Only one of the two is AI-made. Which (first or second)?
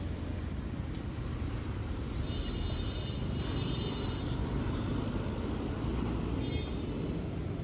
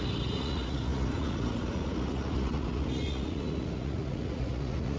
second